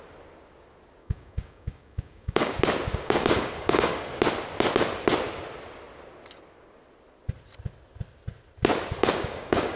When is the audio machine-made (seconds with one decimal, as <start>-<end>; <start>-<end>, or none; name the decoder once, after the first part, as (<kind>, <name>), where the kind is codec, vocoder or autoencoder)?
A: 1.0-2.5 (codec, DAC); 2.9-4.2; 9.0-9.8